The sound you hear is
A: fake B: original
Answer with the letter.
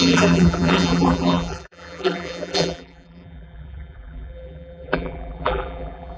A